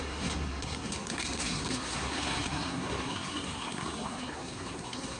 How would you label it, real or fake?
fake